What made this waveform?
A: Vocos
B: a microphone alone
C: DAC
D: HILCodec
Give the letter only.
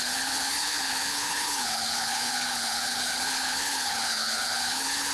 D